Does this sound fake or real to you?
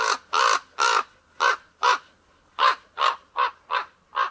real